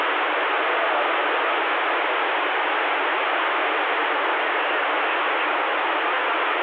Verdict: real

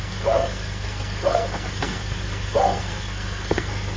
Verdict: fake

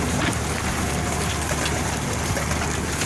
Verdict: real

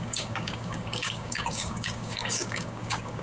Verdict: fake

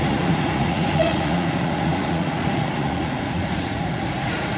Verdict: fake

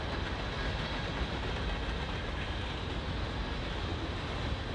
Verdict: real